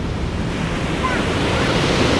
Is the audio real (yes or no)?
no